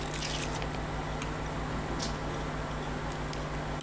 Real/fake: real